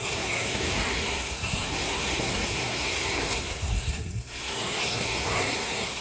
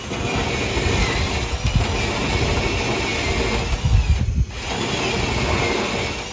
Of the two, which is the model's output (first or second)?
first